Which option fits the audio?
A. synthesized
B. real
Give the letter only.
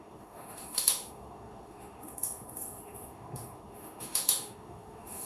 A